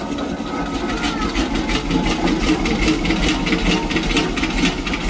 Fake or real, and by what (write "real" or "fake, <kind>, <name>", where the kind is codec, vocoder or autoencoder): real